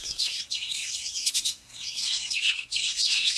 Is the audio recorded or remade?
remade